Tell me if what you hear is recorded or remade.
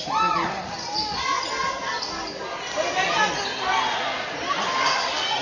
recorded